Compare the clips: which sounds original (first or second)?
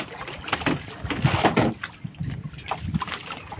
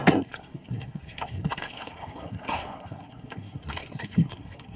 first